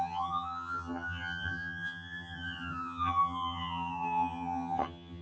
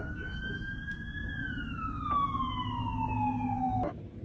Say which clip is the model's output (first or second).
first